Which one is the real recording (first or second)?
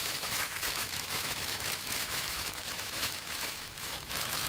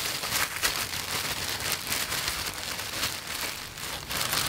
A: second